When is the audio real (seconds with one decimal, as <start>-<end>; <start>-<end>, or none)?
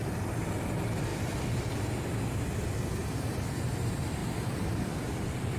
0.0-1.1; 2.0-4.2